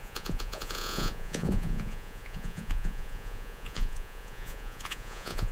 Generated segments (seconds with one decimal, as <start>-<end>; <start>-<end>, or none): 0.0-5.5